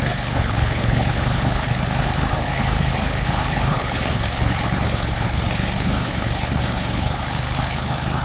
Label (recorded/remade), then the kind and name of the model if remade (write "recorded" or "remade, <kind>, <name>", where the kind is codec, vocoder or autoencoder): remade, codec, HILCodec